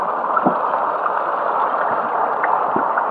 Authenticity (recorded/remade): recorded